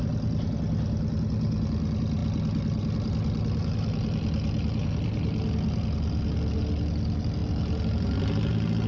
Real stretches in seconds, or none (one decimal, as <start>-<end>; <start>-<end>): 0.0-8.9